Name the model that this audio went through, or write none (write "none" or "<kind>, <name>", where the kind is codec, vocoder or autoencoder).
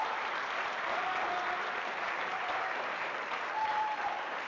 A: vocoder, BigVGAN v2